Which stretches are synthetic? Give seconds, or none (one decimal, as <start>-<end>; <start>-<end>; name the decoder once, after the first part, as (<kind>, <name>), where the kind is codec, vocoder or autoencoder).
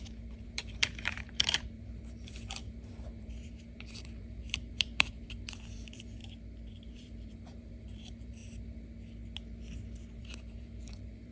0.0-6.2 (vocoder, BigVGAN v2); 6.7-8.4; 10.2-11.3